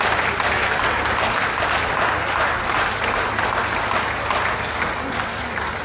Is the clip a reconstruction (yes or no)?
no